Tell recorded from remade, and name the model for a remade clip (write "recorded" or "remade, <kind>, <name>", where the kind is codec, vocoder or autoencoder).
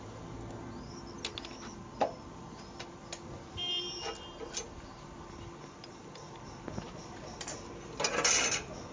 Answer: recorded